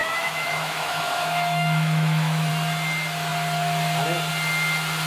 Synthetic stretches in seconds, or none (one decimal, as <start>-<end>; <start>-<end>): 0.0-2.5